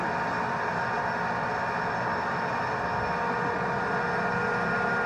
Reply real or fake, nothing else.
real